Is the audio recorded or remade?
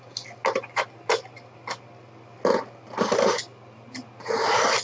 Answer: recorded